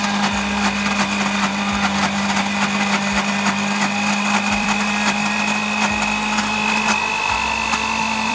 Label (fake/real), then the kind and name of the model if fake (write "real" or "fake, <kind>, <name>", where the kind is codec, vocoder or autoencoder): fake, vocoder, BigVGAN v2